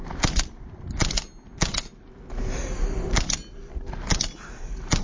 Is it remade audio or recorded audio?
recorded